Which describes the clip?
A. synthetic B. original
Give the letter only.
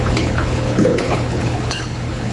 A